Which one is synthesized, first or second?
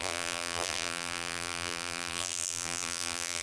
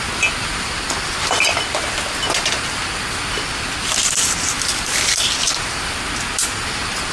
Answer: first